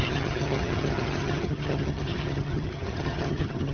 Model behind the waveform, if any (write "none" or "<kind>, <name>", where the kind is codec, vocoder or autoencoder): vocoder, HiFi-GAN